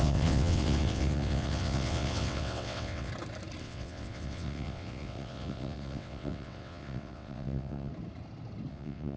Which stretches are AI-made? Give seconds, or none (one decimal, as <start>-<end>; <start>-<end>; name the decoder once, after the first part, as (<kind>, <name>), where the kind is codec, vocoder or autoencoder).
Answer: 0.0-3.1 (vocoder, WaveNeXt); 3.6-7.9; 8.7-9.2

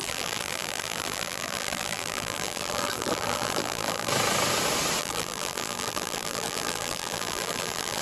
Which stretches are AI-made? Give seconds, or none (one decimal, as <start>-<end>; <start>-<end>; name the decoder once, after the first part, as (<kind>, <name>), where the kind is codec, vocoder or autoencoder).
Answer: 0.0-4.1 (vocoder, BigVGAN v2); 5.0-8.0

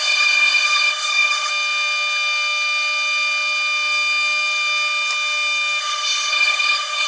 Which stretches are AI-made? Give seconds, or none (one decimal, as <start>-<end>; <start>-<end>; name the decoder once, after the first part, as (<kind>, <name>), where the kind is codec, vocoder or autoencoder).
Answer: 0.0-1.5 (codec, SNAC); 5.8-7.1

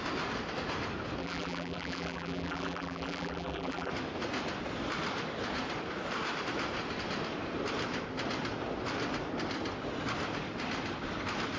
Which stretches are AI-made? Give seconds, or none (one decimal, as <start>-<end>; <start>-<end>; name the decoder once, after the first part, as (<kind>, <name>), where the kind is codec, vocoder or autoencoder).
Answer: 1.2-3.9 (vocoder, BigVGAN v2)

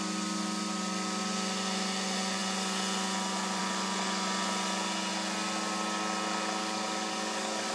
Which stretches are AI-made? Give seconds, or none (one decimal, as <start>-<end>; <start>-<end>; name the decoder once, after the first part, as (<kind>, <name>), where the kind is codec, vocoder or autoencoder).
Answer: 6.6-7.7 (codec, DAC)

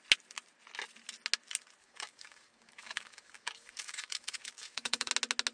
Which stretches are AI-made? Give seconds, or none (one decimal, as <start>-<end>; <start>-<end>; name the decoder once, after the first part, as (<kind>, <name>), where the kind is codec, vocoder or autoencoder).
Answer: 1.8-5.1 (codec, DAC)

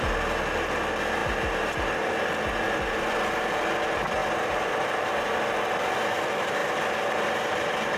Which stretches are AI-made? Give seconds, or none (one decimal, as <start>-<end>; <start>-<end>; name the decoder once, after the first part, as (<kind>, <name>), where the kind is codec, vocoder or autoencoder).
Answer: none